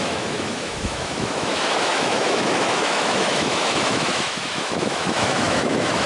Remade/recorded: remade